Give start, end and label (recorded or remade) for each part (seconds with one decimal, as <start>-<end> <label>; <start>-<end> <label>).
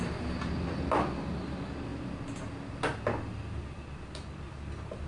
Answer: 0.0-5.1 recorded